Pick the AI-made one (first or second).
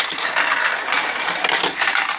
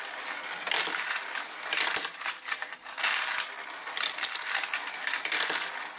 first